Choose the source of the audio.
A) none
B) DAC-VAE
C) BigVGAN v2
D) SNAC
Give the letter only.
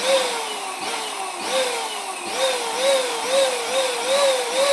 A